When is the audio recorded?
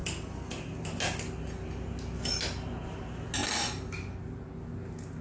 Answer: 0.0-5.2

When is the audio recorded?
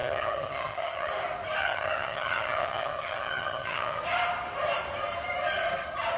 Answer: 1.1-1.6; 4.0-6.2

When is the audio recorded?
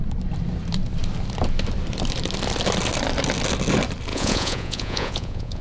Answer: 0.0-4.1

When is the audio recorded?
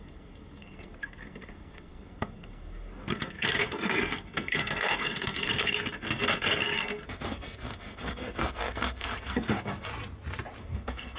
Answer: 9.9-10.6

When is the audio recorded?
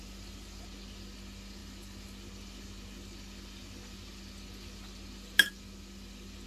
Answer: 0.0-6.5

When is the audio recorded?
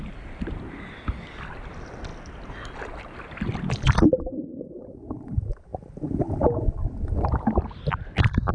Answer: 0.0-8.5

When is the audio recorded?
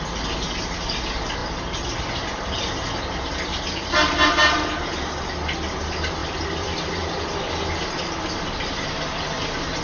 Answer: 0.0-6.2; 8.4-9.8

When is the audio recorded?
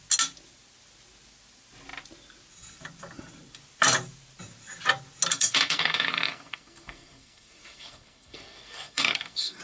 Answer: 0.0-5.3